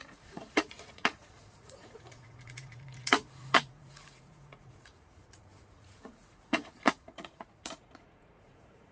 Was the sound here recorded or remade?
remade